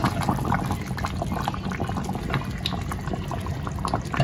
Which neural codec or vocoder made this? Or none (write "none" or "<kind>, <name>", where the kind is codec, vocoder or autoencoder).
none